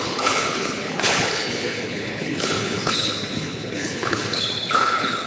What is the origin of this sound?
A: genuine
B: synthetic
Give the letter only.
B